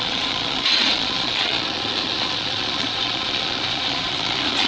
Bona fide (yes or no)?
no